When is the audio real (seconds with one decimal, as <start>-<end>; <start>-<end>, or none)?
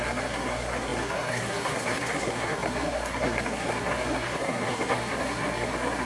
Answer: none